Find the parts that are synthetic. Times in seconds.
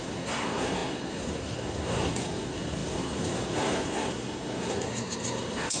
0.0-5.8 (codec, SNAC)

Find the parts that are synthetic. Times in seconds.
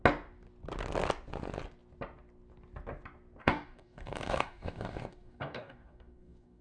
3.4-6.6 (codec, DAC)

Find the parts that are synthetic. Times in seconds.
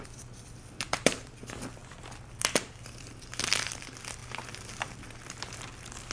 0.0-6.1 (vocoder, BigVGAN v2)